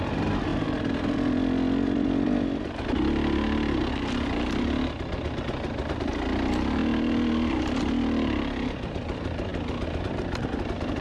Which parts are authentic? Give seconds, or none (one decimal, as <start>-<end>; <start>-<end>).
0.0-11.0